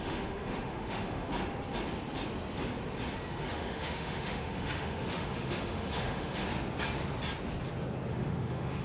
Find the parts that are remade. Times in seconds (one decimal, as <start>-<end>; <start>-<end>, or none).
0.0-1.3; 3.4-6.4; 8.1-8.8